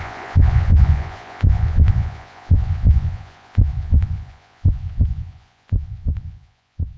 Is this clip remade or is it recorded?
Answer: remade